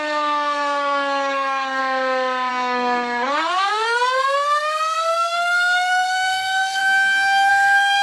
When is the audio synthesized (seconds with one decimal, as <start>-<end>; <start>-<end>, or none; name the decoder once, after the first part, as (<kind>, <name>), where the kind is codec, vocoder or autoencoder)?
0.0-1.8 (codec, SNAC); 2.5-6.8; 7.5-8.0

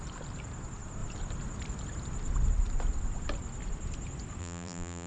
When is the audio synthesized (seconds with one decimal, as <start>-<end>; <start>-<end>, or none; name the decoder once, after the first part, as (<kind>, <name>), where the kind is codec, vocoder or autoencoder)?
4.4-5.1 (vocoder, BigVGAN v2)